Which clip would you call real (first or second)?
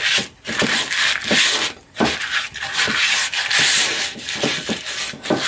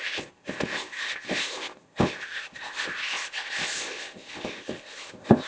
first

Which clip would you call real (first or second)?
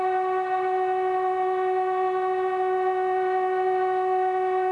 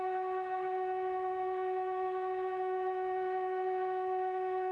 first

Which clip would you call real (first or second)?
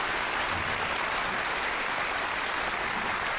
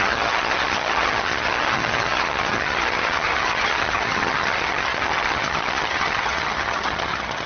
first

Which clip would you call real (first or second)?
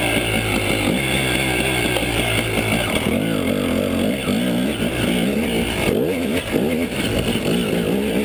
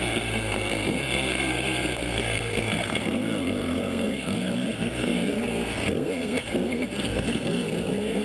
first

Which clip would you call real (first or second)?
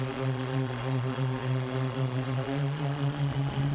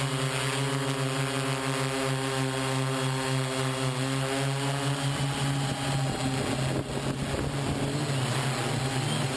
second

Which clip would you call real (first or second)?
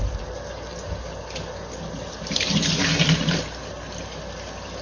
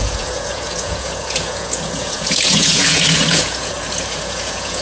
first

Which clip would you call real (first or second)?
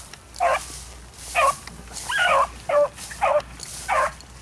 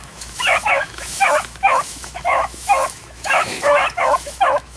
first